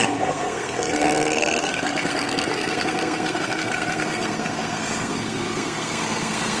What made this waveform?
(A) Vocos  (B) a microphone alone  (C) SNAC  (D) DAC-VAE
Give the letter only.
C